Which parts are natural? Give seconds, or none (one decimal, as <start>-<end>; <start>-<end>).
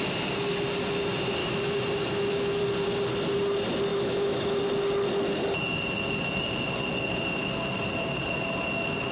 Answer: 0.0-1.4; 2.6-3.9; 4.6-9.1